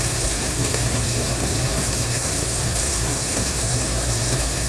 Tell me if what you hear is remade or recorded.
remade